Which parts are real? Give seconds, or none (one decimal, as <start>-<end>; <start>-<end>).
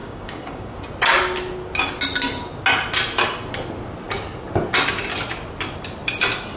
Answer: 0.7-6.6